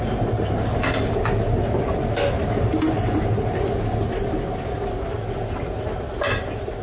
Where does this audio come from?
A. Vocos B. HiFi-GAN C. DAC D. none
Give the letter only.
D